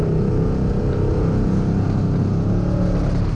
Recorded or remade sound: recorded